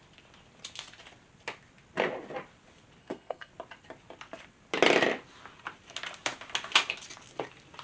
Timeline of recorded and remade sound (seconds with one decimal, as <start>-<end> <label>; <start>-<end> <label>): 0.0-3.0 recorded; 3.0-3.5 remade; 3.5-7.8 recorded